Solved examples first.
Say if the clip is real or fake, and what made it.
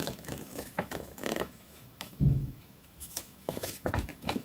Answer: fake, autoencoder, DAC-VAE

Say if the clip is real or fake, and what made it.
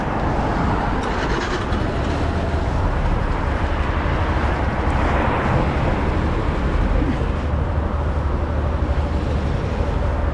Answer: real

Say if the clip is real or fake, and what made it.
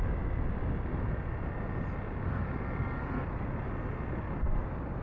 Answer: real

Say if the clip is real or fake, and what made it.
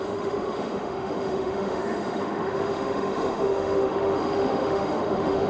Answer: fake, autoencoder, DAC-VAE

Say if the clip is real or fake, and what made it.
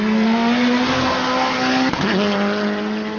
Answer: real